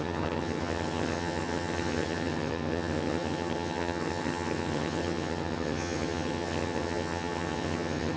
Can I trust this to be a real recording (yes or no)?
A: no